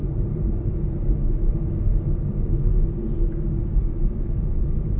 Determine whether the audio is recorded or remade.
recorded